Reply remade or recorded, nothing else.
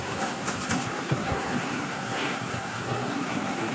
remade